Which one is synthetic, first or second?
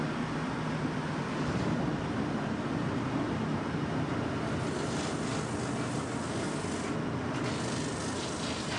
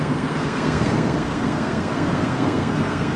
second